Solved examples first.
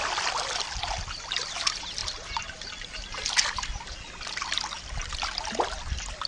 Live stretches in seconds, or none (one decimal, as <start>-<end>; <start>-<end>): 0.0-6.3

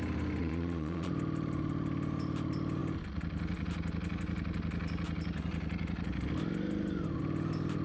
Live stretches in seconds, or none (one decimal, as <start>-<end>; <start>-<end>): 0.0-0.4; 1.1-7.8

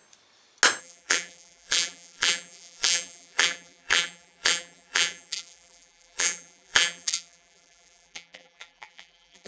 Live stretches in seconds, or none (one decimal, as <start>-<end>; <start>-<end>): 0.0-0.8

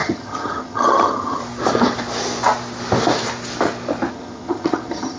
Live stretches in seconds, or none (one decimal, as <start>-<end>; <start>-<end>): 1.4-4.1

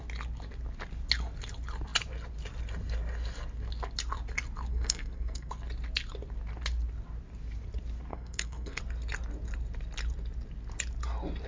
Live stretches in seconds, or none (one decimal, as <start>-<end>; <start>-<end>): 0.0-4.7; 5.5-8.1; 8.8-11.5

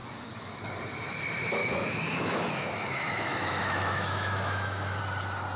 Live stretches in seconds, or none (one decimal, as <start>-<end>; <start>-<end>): 0.6-1.6; 5.0-5.6